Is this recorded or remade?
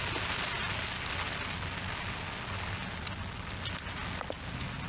recorded